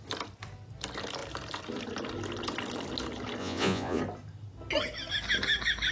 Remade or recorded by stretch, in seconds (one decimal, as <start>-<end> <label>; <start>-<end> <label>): 0.0-3.4 recorded; 3.4-4.0 remade; 4.0-5.9 recorded